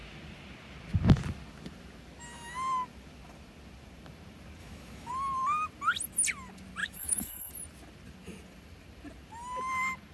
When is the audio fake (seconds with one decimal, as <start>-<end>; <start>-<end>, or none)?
4.6-5.1; 6.8-7.5